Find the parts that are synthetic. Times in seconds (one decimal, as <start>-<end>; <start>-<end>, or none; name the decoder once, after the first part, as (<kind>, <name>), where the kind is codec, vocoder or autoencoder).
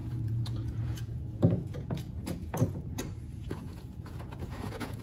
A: 0.0-3.0 (vocoder, Vocos); 3.4-5.0